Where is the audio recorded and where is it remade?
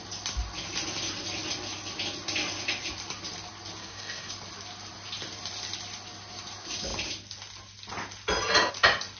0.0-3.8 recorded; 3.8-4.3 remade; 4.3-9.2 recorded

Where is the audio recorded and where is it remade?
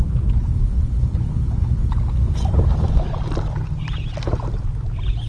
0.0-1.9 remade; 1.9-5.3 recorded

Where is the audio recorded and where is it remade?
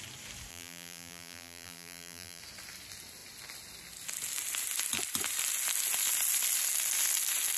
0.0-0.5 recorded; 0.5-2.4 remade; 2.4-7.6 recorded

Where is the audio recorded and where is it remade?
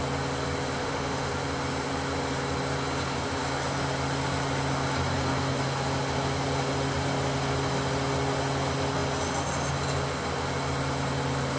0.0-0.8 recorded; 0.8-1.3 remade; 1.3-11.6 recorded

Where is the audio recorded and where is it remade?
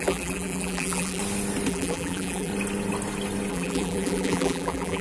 0.0-1.2 remade; 1.2-1.7 recorded; 1.7-2.5 remade; 2.5-3.5 recorded; 3.5-5.0 remade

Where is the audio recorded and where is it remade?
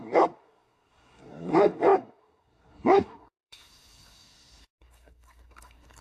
0.0-6.0 remade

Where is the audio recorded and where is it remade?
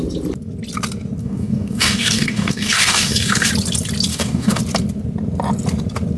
0.0-1.2 recorded; 1.2-3.5 remade; 3.5-4.1 recorded; 4.1-4.6 remade; 4.6-6.2 recorded